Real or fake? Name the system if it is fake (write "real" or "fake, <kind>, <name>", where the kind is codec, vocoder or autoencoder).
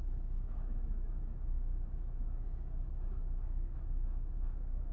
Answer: fake, autoencoder, DAC-VAE